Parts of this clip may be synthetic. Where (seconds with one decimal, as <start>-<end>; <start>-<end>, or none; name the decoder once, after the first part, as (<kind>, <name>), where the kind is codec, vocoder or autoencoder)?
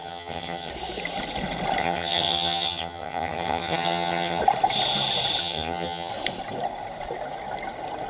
0.0-0.7 (vocoder, HiFi-GAN); 1.8-4.4; 5.4-6.1